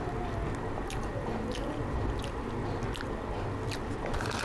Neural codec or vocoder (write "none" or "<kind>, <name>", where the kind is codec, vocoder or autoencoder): none